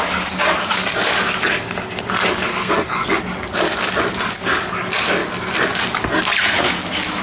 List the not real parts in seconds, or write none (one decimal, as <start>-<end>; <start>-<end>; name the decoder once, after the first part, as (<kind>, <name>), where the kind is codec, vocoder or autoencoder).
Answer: 2.5-3.2 (codec, SNAC)